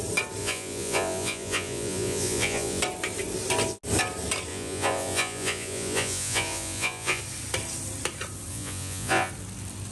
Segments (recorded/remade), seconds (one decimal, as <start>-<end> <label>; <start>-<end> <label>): 0.0-0.4 recorded; 0.4-2.8 remade; 2.8-4.5 recorded; 4.5-7.2 remade; 7.2-8.5 recorded; 8.5-9.3 remade; 9.3-9.9 recorded